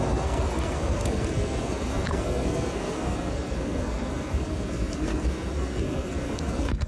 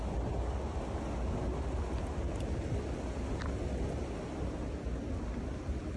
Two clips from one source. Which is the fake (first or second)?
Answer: first